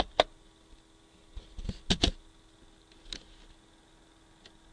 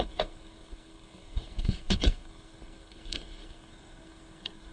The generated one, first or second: second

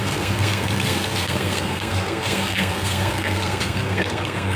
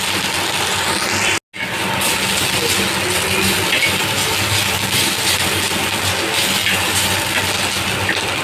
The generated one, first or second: first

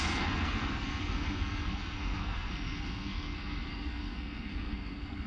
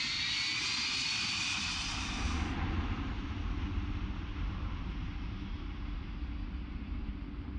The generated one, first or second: first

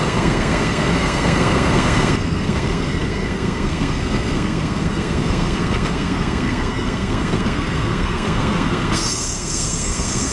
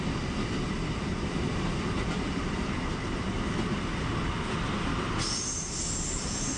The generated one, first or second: first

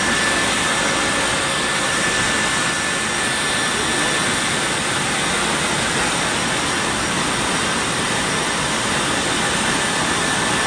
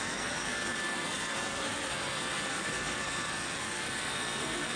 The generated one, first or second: second